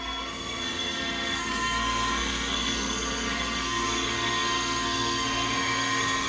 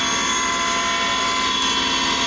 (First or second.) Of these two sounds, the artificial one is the first